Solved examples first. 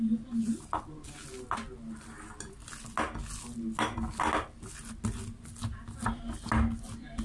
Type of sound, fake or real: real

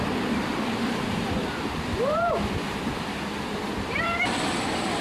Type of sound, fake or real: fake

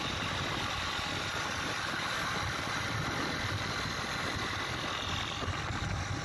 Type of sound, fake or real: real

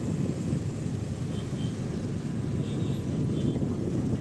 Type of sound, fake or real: real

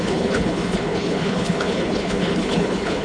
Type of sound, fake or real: fake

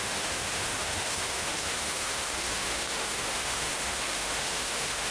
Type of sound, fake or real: fake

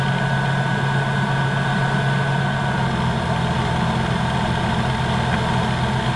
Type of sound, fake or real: real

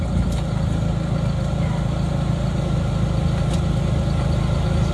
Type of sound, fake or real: real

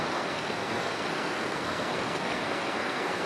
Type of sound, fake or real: fake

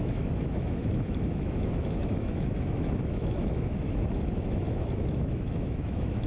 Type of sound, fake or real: fake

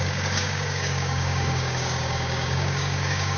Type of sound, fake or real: fake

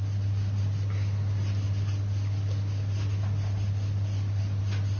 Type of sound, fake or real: real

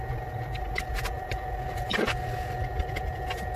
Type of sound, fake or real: real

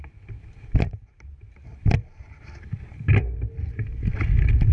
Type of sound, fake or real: real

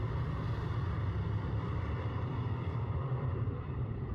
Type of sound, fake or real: fake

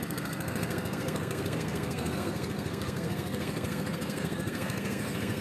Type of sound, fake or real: fake